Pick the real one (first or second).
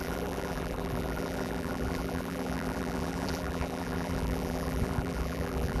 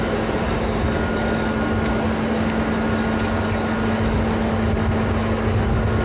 second